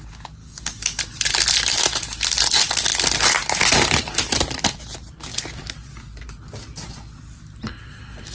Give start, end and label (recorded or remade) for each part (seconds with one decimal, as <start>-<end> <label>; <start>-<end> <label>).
0.0-0.4 recorded; 0.4-1.0 remade; 1.0-8.3 recorded